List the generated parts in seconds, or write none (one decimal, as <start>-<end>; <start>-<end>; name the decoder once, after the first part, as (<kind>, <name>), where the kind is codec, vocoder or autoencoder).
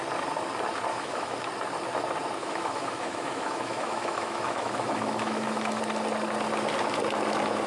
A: 0.9-1.5 (autoencoder, DAC-VAE); 2.4-5.8